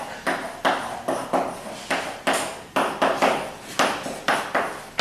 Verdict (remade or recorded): recorded